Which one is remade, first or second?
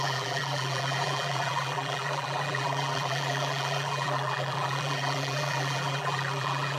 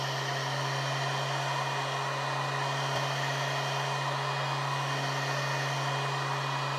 first